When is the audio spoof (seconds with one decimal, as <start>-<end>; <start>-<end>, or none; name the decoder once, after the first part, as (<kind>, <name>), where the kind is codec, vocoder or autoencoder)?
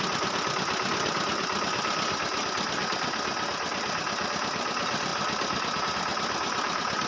none